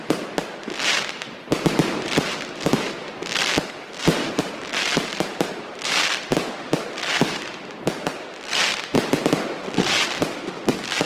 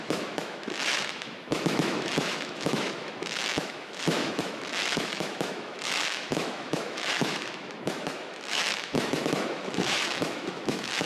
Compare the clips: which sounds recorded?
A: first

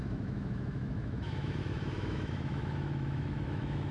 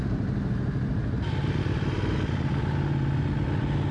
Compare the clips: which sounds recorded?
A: second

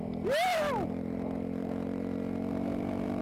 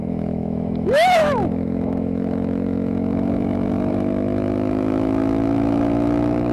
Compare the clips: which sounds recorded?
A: first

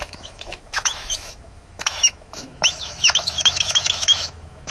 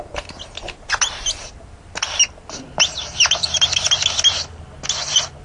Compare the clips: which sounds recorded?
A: second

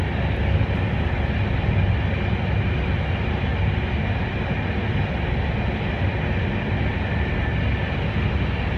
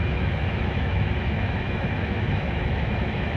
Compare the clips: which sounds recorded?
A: first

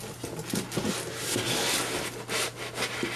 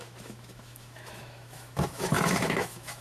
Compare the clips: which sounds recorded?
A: first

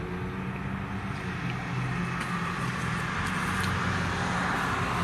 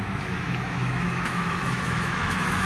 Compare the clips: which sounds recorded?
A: first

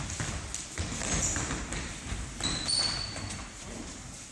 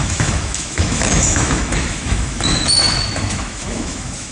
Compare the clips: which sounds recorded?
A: first